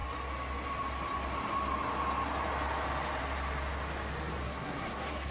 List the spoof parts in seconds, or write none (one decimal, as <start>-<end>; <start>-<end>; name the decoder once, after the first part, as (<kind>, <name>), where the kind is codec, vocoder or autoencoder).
4.4-5.3 (codec, SNAC)